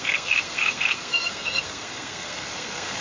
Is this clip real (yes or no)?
no